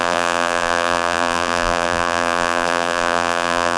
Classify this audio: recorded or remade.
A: remade